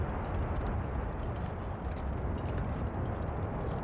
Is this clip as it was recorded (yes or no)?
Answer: yes